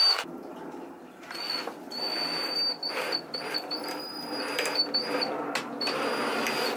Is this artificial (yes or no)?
no